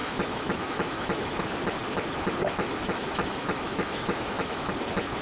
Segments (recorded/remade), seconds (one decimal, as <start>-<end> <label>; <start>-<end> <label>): 0.0-1.4 remade; 1.4-2.4 recorded; 2.4-4.7 remade; 4.7-5.2 recorded